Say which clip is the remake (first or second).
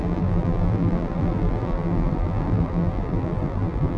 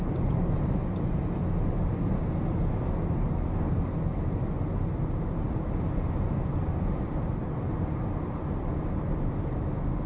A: first